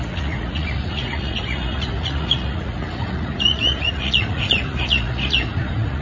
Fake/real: fake